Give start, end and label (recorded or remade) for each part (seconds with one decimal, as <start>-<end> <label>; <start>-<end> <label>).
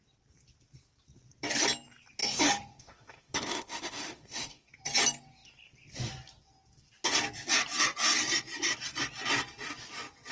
0.0-2.2 recorded; 2.2-4.7 remade; 4.7-10.3 recorded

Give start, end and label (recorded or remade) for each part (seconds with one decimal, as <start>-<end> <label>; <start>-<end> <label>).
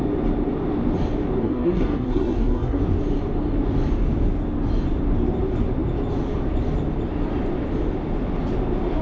0.0-1.4 recorded; 1.4-2.8 remade; 2.8-9.0 recorded